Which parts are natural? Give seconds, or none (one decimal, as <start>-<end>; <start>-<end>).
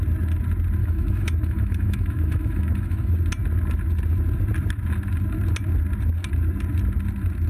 0.0-0.8; 3.1-7.5